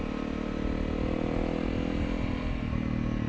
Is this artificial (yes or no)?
no